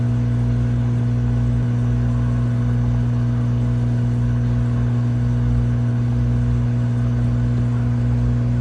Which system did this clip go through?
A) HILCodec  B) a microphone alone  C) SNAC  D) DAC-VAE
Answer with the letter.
B